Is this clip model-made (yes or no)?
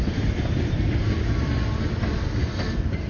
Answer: yes